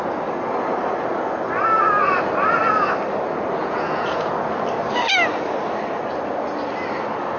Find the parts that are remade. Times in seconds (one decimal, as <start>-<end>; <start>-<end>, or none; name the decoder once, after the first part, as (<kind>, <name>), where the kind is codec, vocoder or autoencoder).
3.6-4.3 (vocoder, Vocos)